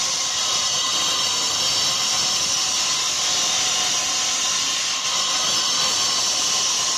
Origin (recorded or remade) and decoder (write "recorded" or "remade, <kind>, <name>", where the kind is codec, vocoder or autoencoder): recorded